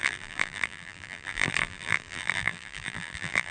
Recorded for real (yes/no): no